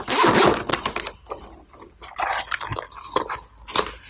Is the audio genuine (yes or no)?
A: yes